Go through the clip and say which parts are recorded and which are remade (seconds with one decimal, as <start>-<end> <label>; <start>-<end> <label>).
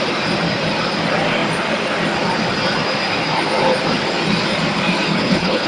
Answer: 0.0-5.1 recorded; 5.1-5.7 remade